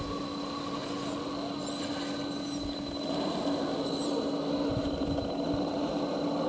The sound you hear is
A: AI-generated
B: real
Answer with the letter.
B